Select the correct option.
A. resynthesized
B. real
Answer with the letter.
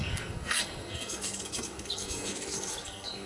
A